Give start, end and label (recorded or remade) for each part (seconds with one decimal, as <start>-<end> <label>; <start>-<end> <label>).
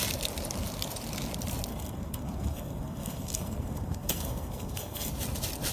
0.0-1.7 recorded; 1.7-5.1 remade; 5.1-5.7 recorded